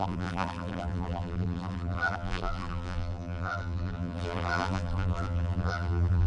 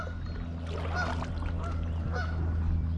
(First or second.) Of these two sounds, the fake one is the first